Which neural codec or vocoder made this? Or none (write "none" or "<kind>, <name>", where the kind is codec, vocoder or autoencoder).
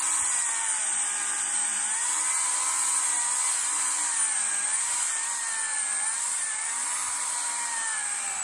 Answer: none